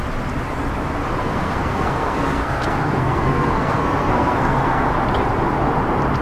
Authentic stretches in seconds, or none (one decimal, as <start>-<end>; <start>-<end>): 0.0-1.2; 4.9-6.2